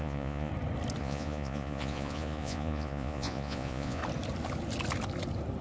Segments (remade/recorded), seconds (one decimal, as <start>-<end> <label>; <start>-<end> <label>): 0.0-0.5 remade; 0.5-1.0 recorded; 1.0-4.0 remade; 4.0-5.6 recorded